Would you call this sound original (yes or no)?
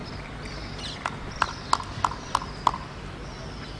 yes